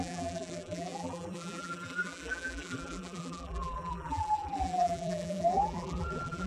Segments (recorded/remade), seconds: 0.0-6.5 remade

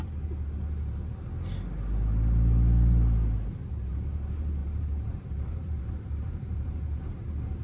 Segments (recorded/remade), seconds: 0.0-4.6 recorded; 4.6-7.0 remade; 7.0-7.6 recorded

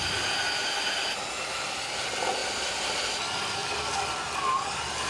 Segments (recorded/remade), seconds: 0.0-2.4 recorded; 2.4-4.0 remade; 4.0-5.1 recorded